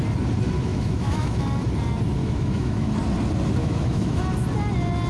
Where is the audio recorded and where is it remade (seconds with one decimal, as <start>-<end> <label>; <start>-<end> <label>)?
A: 0.0-0.7 recorded; 0.7-1.4 remade; 1.4-2.2 recorded; 2.2-2.9 remade; 2.9-3.6 recorded; 3.6-4.2 remade; 4.2-5.1 recorded